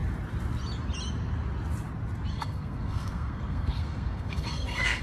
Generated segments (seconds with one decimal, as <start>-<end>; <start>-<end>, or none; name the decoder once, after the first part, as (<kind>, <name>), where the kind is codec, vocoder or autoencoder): 2.3-5.0 (codec, SNAC)